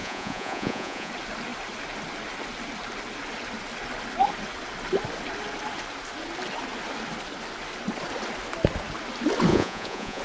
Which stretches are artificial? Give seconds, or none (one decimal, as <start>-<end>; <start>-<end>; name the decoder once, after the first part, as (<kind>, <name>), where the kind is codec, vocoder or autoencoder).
0.0-1.1 (vocoder, Vocos); 9.5-10.2